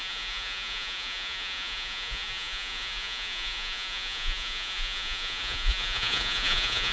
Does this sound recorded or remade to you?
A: remade